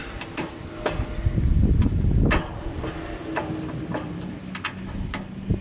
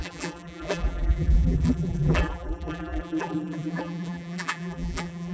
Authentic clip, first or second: first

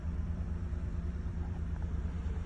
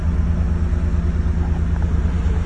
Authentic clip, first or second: second